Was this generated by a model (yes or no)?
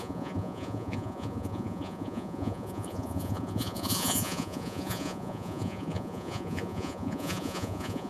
yes